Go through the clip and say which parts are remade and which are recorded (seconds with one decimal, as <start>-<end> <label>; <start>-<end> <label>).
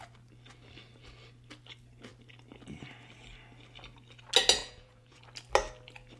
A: 0.0-4.6 recorded; 4.6-5.2 remade; 5.2-6.2 recorded